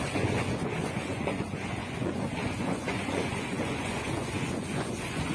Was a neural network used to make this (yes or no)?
yes